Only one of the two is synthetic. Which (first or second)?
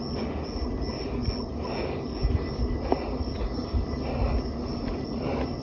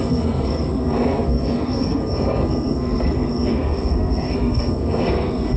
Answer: second